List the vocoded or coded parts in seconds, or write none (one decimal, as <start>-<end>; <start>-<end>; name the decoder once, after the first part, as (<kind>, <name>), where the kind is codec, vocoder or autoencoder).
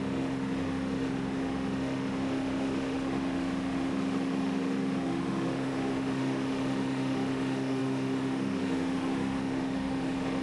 0.0-10.4 (autoencoder, DAC-VAE)